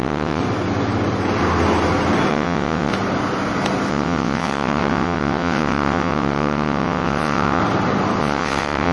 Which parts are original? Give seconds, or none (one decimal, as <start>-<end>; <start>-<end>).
0.4-2.3; 2.9-3.9; 7.6-8.2